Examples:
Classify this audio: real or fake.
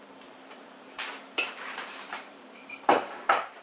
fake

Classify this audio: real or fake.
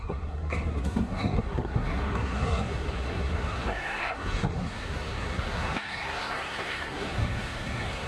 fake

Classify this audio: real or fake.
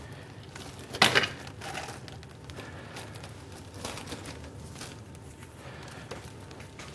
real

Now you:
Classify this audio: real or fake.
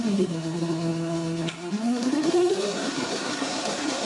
fake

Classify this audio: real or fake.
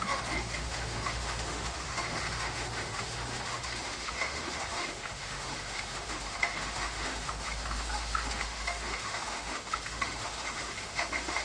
fake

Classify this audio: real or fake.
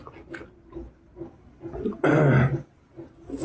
real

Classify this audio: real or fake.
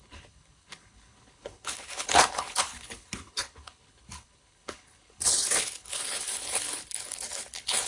fake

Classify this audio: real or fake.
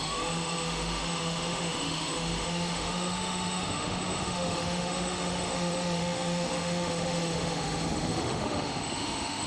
fake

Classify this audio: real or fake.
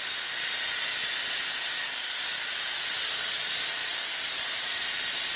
real